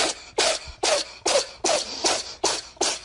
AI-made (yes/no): no